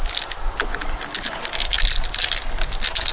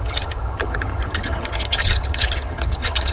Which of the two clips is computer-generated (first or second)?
second